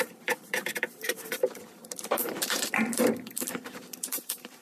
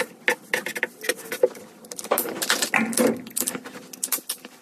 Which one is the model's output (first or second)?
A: first